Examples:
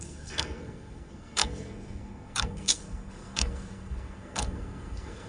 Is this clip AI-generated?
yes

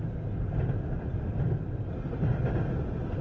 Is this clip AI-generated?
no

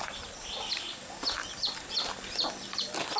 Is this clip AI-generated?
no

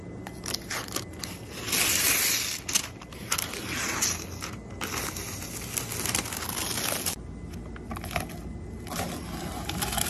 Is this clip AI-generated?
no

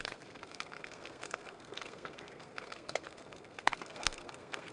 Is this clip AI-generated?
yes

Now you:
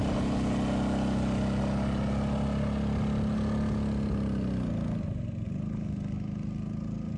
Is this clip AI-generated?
no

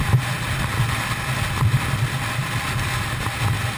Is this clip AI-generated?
no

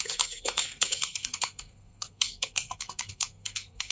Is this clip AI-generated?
yes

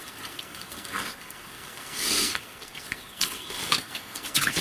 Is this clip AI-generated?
yes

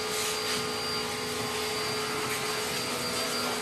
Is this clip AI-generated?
no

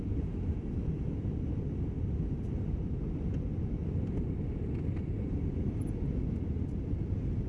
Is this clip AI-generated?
no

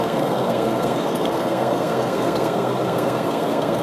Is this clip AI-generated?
yes